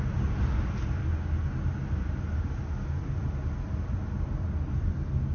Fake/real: real